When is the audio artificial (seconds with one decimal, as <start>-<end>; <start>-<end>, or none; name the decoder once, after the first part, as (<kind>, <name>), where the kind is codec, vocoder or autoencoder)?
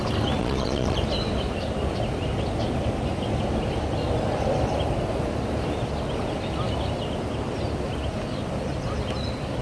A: 0.4-1.0 (vocoder, Vocos)